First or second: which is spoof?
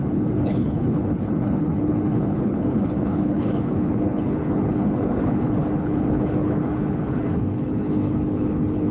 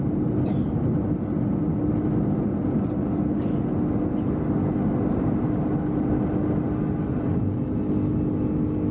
first